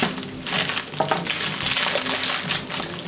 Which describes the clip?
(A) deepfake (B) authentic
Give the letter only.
B